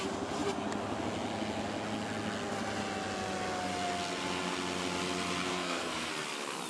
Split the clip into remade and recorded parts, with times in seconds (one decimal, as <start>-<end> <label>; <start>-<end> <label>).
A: 0.0-5.5 recorded; 5.5-6.1 remade; 6.1-6.7 recorded